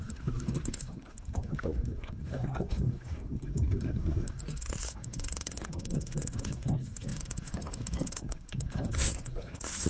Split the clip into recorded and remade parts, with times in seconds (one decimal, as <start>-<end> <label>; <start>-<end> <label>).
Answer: 0.0-9.9 remade